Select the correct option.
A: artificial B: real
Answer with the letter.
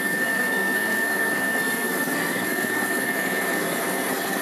A